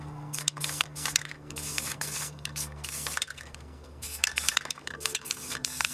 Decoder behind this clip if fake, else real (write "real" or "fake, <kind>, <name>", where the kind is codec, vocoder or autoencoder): fake, codec, SNAC